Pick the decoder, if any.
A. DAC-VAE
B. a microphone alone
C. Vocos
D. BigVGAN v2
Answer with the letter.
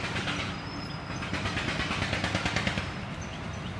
B